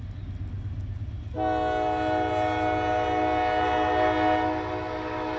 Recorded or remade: recorded